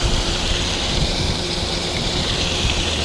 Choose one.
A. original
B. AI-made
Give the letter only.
B